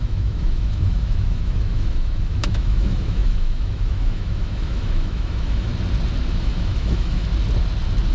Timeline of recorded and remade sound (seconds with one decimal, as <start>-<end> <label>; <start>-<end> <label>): 0.0-5.7 remade; 5.7-6.3 recorded; 6.3-7.3 remade; 7.3-8.1 recorded